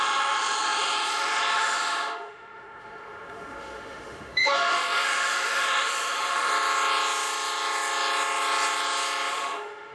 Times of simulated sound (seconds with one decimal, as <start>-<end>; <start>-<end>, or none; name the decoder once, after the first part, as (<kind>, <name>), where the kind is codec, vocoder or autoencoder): 0.0-6.5 (autoencoder, DAC-VAE); 9.3-9.9